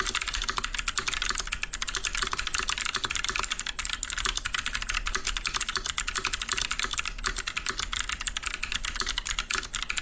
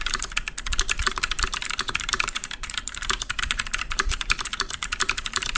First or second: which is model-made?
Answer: second